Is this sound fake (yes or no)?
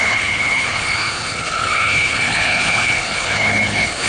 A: yes